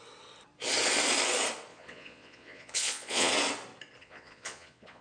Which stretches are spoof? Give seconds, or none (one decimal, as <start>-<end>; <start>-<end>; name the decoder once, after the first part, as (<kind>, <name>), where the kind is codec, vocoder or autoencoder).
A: 1.7-3.3 (vocoder, Vocos); 4.0-5.0